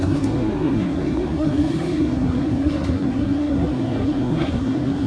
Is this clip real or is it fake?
fake